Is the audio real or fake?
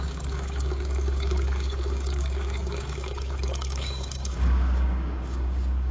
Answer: fake